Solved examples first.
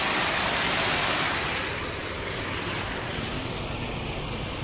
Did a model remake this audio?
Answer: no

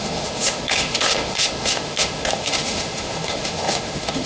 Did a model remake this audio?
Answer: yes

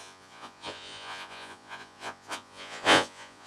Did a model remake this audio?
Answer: yes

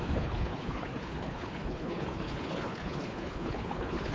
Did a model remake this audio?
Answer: yes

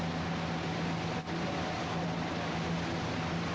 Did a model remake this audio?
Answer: no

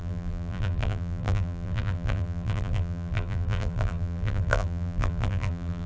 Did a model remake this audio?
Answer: yes